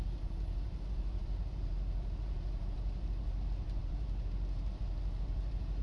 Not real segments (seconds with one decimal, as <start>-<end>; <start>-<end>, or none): 0.0-5.8